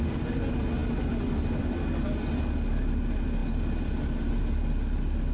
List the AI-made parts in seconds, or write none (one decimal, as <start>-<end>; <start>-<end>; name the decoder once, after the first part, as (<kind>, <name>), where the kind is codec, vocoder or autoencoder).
none